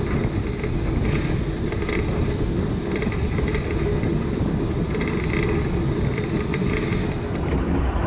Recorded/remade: recorded